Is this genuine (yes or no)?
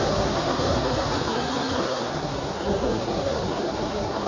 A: no